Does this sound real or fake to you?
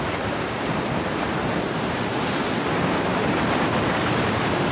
fake